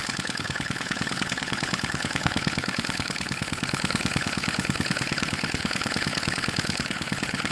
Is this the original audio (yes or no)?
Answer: no